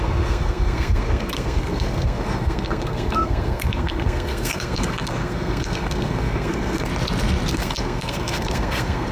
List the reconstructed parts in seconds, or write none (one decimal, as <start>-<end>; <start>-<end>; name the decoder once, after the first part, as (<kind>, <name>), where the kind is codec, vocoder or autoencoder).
0.0-6.9 (codec, SNAC); 7.5-9.1